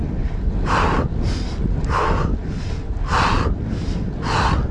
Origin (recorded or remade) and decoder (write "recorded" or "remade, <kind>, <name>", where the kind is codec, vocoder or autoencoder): recorded